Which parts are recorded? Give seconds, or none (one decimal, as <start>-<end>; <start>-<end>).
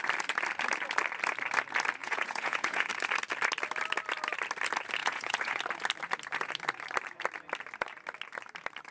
0.0-2.0; 2.9-5.0; 5.6-8.9